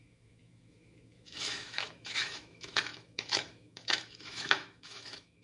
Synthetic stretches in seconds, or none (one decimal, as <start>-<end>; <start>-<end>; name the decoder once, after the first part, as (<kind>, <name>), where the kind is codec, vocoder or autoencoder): 0.0-5.4 (autoencoder, DAC-VAE)